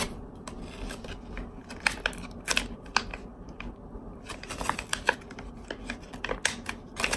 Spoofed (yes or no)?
no